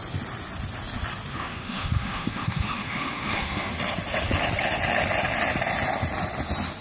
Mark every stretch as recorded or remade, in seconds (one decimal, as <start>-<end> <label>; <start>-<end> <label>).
0.0-1.3 recorded; 1.3-3.8 remade; 3.8-6.8 recorded